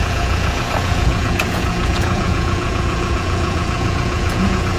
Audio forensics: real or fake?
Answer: fake